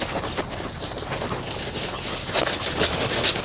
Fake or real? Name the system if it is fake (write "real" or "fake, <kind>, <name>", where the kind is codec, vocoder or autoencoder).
real